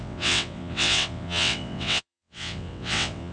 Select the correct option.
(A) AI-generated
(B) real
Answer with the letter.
A